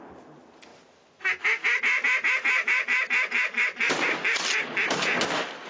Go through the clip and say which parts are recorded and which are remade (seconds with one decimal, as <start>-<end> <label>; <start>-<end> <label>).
0.0-5.7 recorded